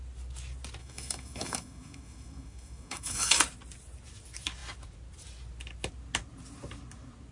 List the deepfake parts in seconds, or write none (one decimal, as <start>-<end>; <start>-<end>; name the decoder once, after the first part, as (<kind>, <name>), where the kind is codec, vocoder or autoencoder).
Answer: 0.8-3.4 (autoencoder, DAC-VAE)